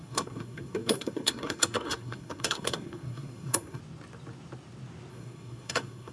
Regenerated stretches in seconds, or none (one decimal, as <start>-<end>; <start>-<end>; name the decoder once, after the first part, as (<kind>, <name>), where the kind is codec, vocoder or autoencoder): 0.0-3.8 (codec, SNAC); 5.1-6.1